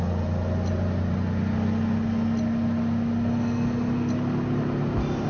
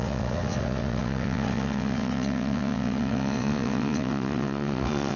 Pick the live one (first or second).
first